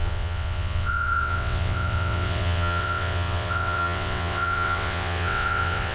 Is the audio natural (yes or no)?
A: no